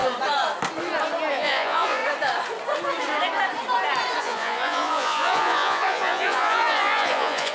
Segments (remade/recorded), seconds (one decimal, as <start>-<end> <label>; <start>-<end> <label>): 0.0-1.3 recorded; 1.3-2.0 remade; 2.0-4.2 recorded; 4.2-7.5 remade